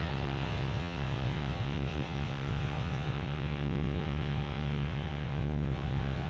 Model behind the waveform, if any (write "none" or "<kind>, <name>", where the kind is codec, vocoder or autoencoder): vocoder, WaveNeXt